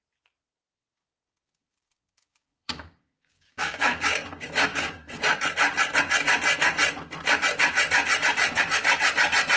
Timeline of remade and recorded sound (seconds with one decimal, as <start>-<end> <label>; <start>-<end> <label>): 0.0-0.5 recorded; 0.5-5.2 remade; 5.2-9.6 recorded